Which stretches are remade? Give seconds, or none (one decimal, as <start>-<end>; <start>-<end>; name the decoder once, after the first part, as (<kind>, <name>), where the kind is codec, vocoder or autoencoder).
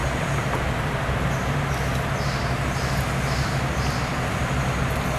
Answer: 0.0-1.6 (vocoder, BigVGAN v2)